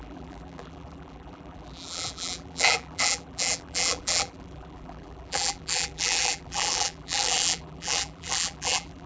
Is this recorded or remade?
remade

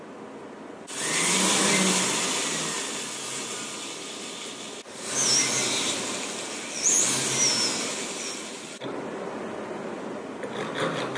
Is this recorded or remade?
recorded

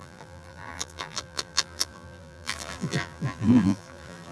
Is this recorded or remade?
remade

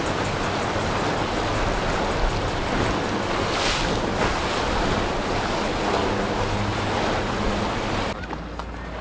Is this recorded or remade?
recorded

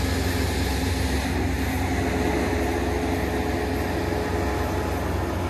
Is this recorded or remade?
recorded